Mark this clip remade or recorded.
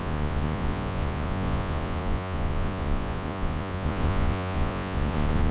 remade